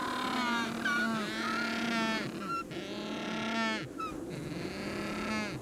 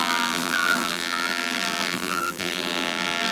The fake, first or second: second